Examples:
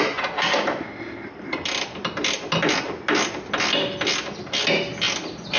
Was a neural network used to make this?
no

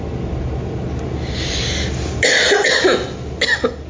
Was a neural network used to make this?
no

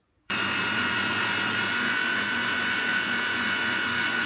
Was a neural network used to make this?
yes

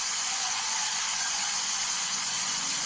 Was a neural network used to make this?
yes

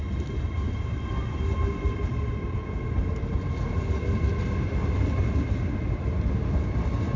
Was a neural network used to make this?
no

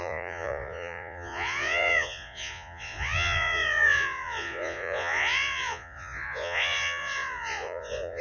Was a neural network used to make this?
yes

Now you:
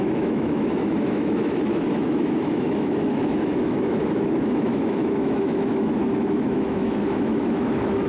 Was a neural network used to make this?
yes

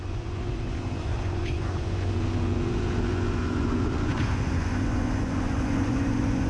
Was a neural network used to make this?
yes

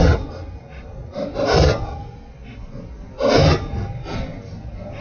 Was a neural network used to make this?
no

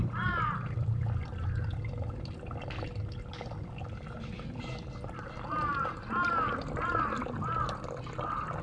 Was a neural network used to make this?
no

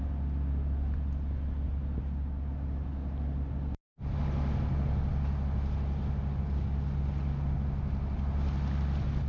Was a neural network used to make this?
no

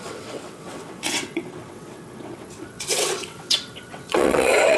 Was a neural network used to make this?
yes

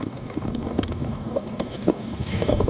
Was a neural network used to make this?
yes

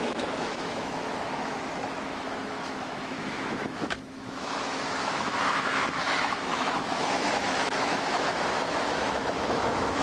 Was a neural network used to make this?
yes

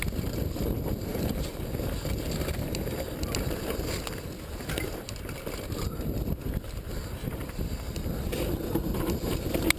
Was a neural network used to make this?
no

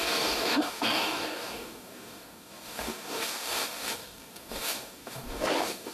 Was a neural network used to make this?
yes